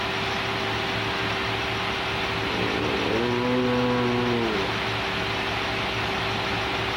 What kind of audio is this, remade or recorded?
recorded